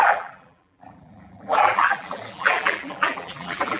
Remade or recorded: remade